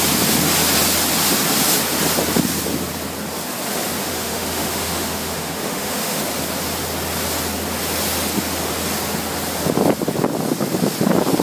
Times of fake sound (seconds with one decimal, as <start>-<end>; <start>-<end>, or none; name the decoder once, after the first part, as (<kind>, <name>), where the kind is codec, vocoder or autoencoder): 4.0-6.2 (autoencoder, DAC-VAE)

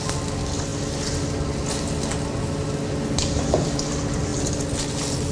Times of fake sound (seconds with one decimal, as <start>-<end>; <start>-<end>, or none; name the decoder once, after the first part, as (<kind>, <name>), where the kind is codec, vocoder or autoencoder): none

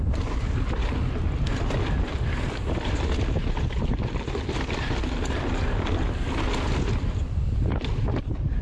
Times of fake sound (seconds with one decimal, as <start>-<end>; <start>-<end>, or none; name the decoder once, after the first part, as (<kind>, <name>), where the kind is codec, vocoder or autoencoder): none

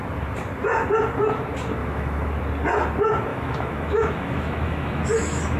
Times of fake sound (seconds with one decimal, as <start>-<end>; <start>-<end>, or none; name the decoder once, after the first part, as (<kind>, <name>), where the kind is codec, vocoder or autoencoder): 1.8-2.3 (autoencoder, DAC-VAE); 3.3-5.6

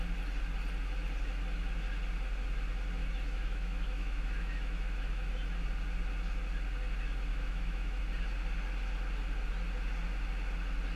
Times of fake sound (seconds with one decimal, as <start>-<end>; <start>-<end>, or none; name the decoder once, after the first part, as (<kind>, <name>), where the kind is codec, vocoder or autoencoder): 3.0-5.3 (autoencoder, DAC-VAE); 7.3-8.0